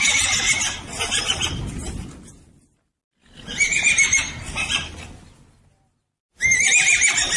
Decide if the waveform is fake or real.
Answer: real